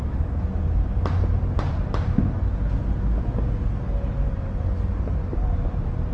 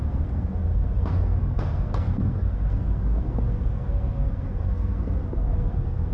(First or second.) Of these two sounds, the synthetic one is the second